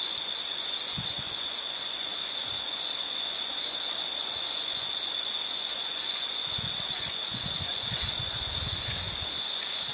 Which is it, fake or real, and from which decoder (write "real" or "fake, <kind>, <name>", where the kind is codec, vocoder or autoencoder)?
fake, vocoder, Vocos